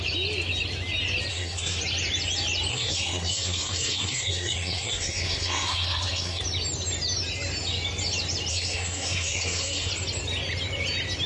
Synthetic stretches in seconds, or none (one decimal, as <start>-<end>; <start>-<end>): 1.3-1.8; 2.7-6.4; 8.5-9.9